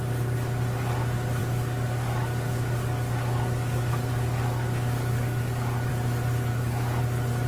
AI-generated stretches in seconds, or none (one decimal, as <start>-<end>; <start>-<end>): 1.4-5.9; 6.5-7.0